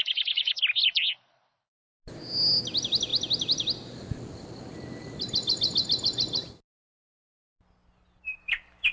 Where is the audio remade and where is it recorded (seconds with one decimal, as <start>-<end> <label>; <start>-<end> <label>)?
0.0-0.6 remade; 0.6-8.9 recorded